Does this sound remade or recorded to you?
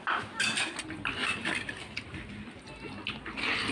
recorded